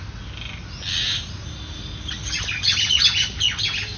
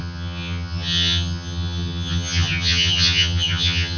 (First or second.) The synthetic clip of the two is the second